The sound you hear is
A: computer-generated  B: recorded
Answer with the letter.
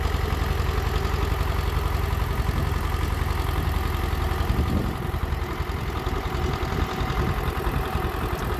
B